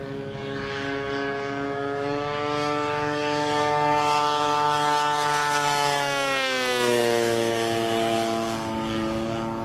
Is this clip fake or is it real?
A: fake